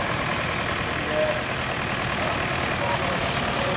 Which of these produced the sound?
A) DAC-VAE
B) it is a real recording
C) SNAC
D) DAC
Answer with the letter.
B